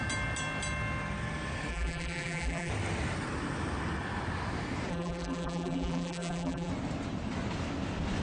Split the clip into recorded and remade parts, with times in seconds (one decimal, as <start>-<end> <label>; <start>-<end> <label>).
0.0-1.7 recorded; 1.7-2.7 remade; 2.7-4.9 recorded; 4.9-6.7 remade; 6.7-8.2 recorded